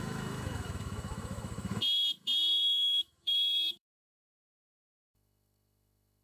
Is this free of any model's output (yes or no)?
no